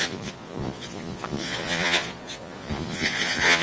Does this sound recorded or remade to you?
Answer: remade